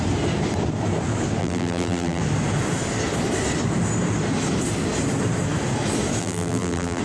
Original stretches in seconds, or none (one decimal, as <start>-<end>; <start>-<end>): 0.0-1.4; 2.2-6.2